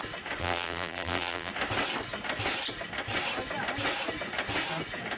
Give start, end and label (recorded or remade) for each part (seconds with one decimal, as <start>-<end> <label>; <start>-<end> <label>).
0.0-0.4 recorded; 0.4-1.5 remade; 1.5-5.2 recorded